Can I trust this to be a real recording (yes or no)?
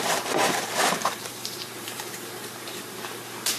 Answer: no